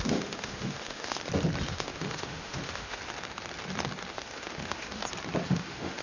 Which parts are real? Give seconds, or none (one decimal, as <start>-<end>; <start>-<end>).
1.2-1.7; 3.0-4.1; 5.0-5.5